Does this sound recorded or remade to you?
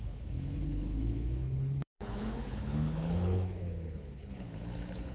remade